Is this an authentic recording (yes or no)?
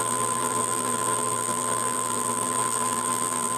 no